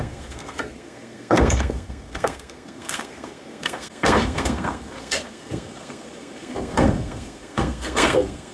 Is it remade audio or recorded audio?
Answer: remade